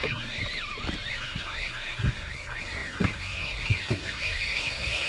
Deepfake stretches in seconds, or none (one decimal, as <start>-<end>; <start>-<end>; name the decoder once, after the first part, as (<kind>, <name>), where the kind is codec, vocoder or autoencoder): 0.0-0.4 (codec, SNAC); 1.1-5.1